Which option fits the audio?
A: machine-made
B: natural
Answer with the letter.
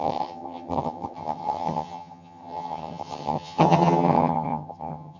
A